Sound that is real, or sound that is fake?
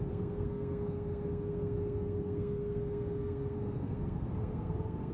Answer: fake